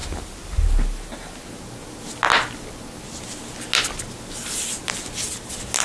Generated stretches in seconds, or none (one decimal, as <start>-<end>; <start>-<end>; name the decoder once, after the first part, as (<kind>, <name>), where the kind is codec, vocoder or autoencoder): none